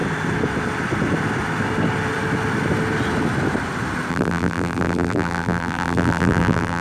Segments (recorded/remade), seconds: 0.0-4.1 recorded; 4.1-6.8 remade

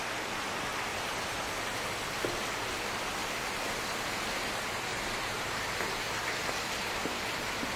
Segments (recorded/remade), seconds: 0.0-0.9 recorded; 0.9-1.5 remade; 1.5-4.9 recorded; 4.9-6.5 remade; 6.5-7.8 recorded

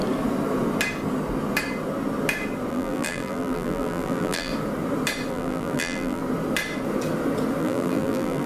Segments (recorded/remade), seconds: 0.0-2.7 recorded; 2.7-4.5 remade; 4.5-5.3 recorded; 5.3-6.2 remade; 6.2-7.6 recorded; 7.6-8.5 remade